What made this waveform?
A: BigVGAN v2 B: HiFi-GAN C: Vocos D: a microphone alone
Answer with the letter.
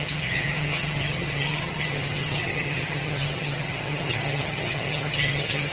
B